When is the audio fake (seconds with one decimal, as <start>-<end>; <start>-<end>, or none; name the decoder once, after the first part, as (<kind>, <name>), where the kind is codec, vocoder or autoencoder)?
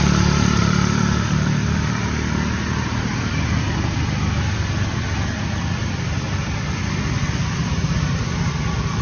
0.6-4.9 (vocoder, BigVGAN v2)